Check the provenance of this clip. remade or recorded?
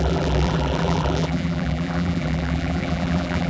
remade